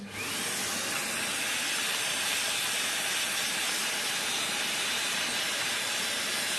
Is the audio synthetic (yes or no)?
no